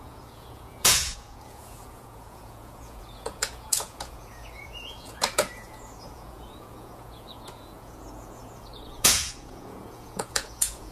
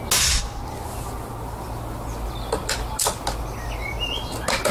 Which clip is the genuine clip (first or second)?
second